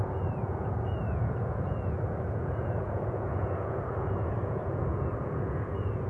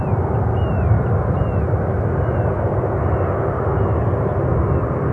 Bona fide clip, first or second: second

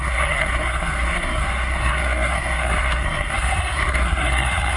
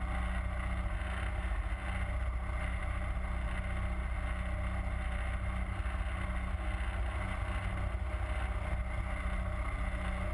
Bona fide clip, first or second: second